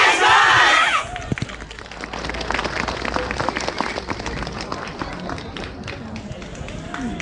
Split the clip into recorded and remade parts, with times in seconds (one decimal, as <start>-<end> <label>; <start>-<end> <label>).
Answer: 0.0-7.2 recorded